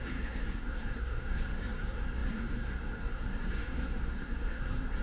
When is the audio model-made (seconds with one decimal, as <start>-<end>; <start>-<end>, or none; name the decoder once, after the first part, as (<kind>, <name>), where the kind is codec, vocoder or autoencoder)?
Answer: 0.0-5.0 (codec, SNAC)